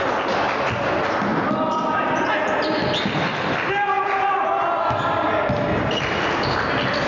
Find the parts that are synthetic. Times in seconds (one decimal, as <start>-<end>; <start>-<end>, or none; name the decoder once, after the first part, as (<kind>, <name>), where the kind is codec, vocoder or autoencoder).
none